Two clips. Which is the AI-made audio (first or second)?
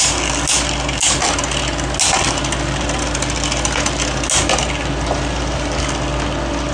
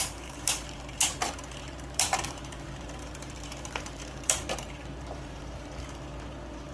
second